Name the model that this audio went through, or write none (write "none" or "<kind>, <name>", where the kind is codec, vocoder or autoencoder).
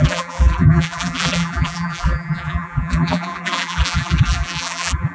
vocoder, BigVGAN v2